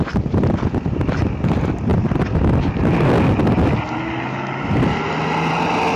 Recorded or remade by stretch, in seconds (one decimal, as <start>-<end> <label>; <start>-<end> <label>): 0.0-6.0 recorded